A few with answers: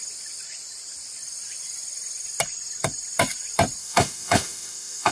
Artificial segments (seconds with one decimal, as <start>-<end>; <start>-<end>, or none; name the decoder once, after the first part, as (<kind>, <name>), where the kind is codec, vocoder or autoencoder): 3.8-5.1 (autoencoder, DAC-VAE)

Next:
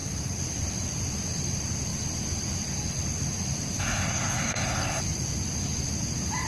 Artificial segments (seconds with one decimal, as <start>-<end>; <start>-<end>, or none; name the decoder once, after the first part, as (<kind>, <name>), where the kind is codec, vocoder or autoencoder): 3.8-5.0 (codec, SNAC)

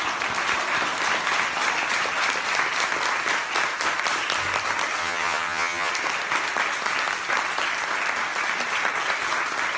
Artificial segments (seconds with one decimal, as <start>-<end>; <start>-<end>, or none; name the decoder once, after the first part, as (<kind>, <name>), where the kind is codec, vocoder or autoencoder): 5.0-5.9 (vocoder, HiFi-GAN)

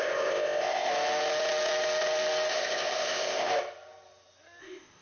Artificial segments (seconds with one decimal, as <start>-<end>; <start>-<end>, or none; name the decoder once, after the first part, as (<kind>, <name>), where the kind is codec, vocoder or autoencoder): 0.0-0.9 (codec, ZipCodec); 2.5-3.5; 4.6-5.0